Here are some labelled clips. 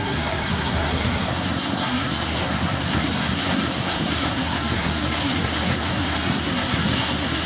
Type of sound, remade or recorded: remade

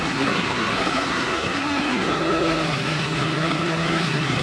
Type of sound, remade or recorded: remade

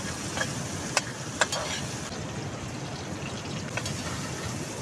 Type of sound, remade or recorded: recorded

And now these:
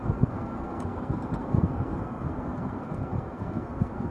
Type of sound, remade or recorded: remade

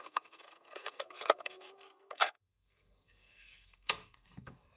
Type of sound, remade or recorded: remade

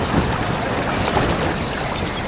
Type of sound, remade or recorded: recorded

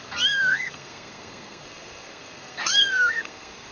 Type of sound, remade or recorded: remade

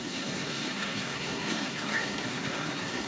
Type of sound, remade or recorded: remade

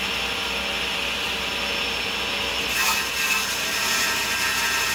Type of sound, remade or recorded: recorded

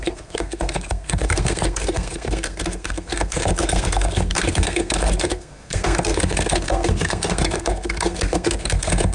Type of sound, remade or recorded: remade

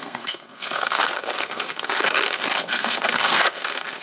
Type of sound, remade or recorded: remade